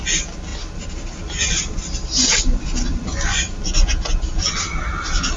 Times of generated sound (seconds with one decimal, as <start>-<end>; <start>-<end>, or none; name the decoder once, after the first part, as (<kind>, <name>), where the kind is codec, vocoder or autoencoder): 0.5-3.6 (vocoder, BigVGAN v2)